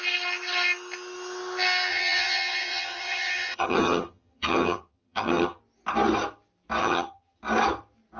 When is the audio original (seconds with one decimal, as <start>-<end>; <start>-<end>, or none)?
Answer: 0.0-1.9; 5.6-6.8; 7.4-8.2